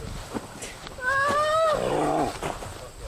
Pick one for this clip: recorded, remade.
recorded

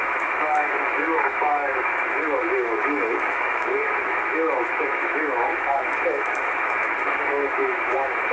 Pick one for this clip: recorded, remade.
remade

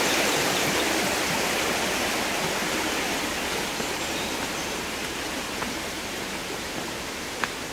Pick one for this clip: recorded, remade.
recorded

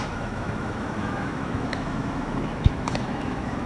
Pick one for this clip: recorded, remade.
remade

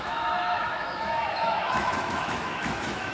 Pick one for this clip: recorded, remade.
remade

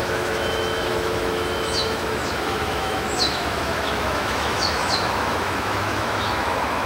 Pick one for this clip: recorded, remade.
remade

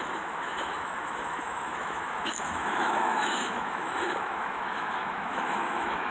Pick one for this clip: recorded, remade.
remade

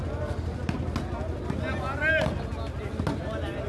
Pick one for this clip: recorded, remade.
recorded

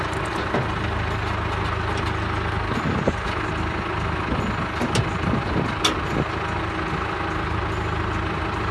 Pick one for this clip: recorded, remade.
recorded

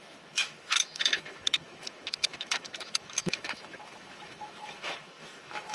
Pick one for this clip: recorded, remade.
remade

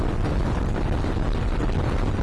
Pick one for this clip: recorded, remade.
recorded